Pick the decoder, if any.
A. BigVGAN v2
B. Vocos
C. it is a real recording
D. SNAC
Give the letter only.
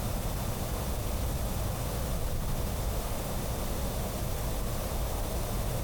C